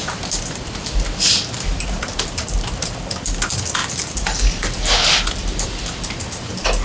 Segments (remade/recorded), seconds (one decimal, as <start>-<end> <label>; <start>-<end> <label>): 0.0-3.8 remade; 3.8-5.3 recorded; 5.3-6.8 remade